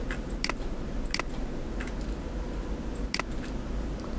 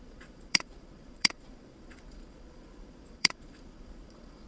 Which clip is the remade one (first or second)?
second